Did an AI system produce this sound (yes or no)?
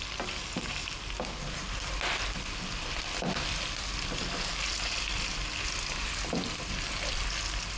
no